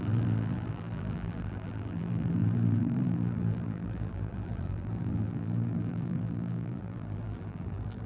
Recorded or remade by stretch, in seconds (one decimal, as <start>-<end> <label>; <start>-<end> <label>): 0.0-8.1 remade